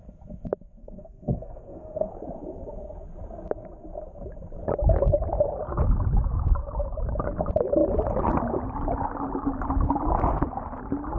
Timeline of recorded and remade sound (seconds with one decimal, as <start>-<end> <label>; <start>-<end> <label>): 0.0-0.8 recorded; 0.8-2.1 remade; 2.1-11.2 recorded